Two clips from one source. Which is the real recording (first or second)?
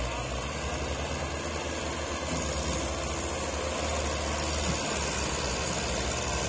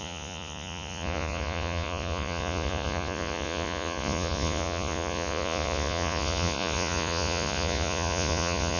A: first